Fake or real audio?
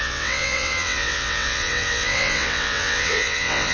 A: fake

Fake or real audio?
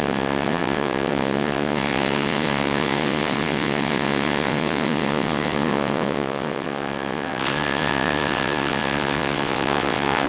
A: fake